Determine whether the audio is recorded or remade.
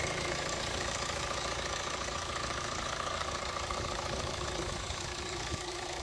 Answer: remade